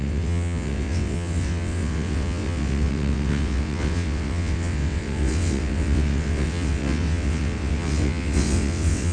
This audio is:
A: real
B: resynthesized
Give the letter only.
B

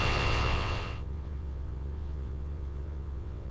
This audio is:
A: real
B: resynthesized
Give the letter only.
B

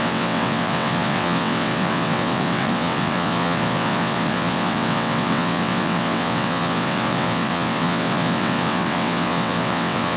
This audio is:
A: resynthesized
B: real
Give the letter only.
A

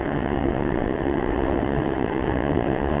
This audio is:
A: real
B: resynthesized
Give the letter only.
B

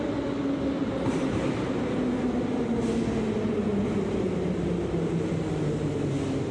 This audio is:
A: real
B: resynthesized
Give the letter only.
A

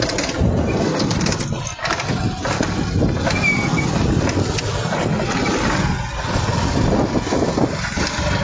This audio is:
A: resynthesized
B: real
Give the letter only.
B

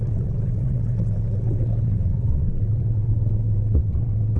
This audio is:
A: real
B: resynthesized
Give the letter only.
B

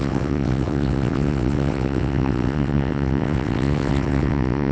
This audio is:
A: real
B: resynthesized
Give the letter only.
B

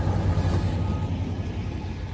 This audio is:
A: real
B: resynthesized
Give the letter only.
A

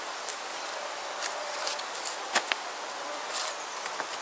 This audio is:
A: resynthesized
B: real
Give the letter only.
B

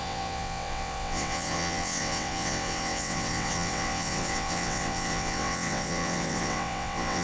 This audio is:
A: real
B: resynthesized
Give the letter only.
B